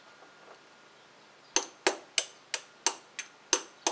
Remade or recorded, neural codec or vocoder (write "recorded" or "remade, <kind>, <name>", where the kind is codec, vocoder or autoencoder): recorded